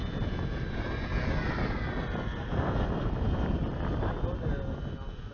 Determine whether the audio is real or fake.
real